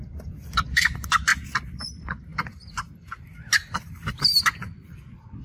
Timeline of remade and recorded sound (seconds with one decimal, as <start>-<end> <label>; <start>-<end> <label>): 0.0-1.3 remade; 1.3-1.8 recorded; 1.8-2.3 remade; 2.3-4.6 recorded; 4.6-5.4 remade